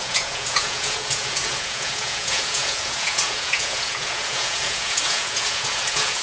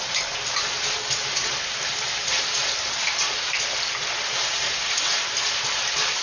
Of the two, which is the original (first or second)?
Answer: second